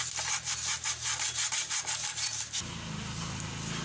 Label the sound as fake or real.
real